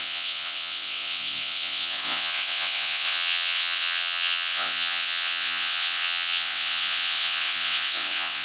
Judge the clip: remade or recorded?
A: remade